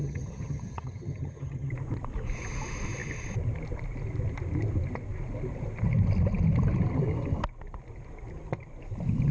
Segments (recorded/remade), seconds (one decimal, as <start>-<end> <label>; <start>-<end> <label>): 0.0-1.7 remade; 1.7-9.3 recorded

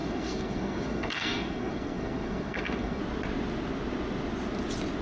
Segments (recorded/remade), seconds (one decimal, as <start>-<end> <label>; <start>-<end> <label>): 0.0-3.0 remade; 3.0-5.0 recorded

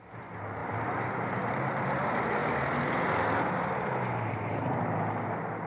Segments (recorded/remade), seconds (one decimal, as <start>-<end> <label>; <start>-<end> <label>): 0.0-5.7 recorded

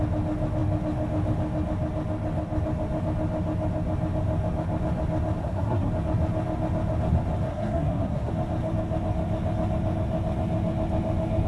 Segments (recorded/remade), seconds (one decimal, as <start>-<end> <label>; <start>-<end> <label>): 0.0-5.4 recorded; 5.4-5.9 remade; 5.9-7.5 recorded; 7.5-8.3 remade; 8.3-11.5 recorded

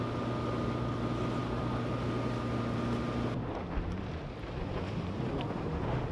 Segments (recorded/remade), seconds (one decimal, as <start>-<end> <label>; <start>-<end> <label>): 0.0-6.1 recorded

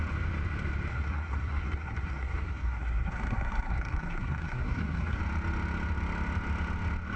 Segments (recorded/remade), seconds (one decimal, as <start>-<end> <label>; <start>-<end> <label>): 0.0-0.9 recorded; 0.9-5.2 remade; 5.2-7.2 recorded

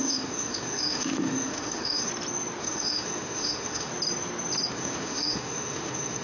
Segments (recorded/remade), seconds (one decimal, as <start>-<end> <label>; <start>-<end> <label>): 0.0-2.1 remade; 2.1-2.6 recorded; 2.6-3.9 remade; 3.9-4.7 recorded; 4.7-6.2 remade